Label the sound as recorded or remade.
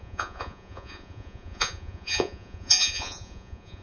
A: remade